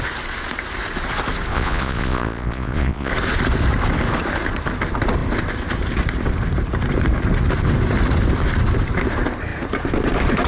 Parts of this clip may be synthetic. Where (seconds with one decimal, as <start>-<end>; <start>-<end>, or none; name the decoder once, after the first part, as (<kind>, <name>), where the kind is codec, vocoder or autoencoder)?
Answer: 1.5-3.1 (vocoder, Vocos)